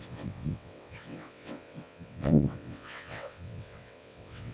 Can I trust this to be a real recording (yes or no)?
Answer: no